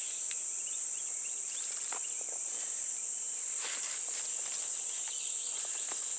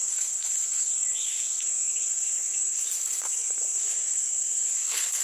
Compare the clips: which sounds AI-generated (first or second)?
second